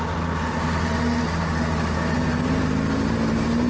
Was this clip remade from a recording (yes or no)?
no